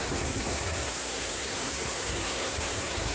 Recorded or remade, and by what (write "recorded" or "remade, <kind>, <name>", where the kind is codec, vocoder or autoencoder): remade, codec, SNAC